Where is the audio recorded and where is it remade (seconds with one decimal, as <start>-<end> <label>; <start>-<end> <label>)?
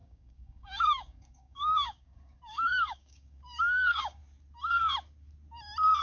0.0-4.2 remade; 4.2-6.0 recorded